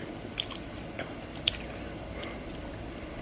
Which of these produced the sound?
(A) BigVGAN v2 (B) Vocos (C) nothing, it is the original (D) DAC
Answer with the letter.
C